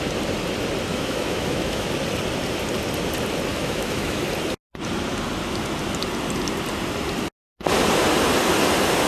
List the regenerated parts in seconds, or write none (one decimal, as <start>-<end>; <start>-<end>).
0.9-1.9; 3.5-4.2